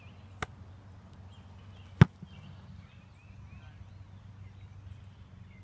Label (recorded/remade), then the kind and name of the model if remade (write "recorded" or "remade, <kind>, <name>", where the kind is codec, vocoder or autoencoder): recorded